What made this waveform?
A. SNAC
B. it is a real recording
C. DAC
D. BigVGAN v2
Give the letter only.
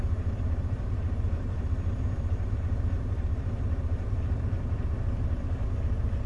D